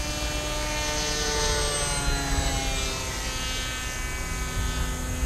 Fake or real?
real